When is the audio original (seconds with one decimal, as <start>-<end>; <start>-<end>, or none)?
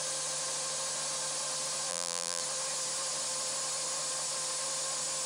0.0-1.9; 2.4-5.3